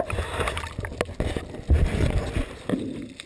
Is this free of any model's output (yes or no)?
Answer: yes